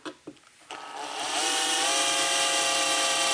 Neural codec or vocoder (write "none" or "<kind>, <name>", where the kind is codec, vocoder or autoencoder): none